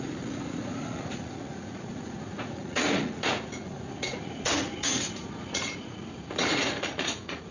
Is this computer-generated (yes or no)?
yes